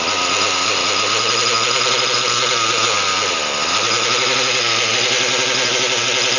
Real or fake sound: real